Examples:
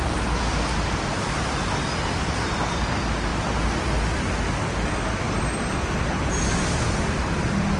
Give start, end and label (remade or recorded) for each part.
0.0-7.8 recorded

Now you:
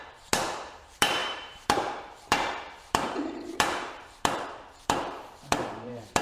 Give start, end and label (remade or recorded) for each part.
0.0-6.2 remade

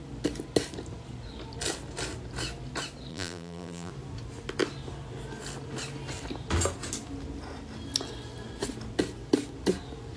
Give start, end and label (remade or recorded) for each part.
0.0-3.1 recorded; 3.1-3.9 remade; 3.9-10.2 recorded

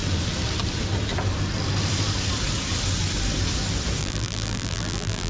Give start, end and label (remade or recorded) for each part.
0.0-4.0 recorded; 4.0-5.3 remade

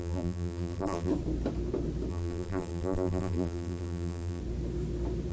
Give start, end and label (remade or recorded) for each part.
0.0-1.1 remade; 1.1-2.1 recorded; 2.1-4.4 remade; 4.4-5.3 recorded

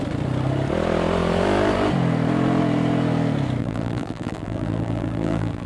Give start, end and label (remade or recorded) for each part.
0.0-3.6 recorded; 3.6-5.7 remade

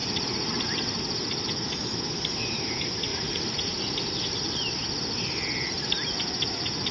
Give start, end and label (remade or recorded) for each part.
0.0-3.1 recorded; 3.1-6.2 remade; 6.2-6.9 recorded

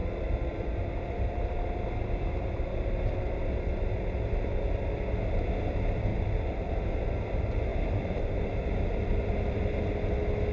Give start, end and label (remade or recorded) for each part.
0.0-3.1 remade; 3.1-6.1 recorded; 6.1-6.7 remade; 6.7-7.7 recorded; 7.7-9.8 remade; 9.8-10.5 recorded